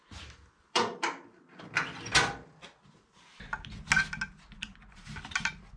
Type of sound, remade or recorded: recorded